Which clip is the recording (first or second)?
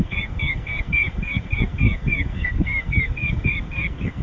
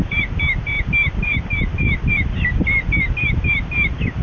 second